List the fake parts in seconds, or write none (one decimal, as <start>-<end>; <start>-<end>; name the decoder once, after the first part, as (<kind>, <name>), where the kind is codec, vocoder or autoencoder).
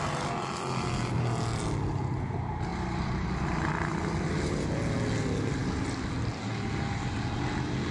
none